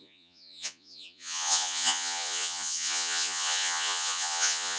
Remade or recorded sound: remade